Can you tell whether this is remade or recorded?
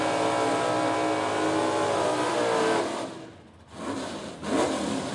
recorded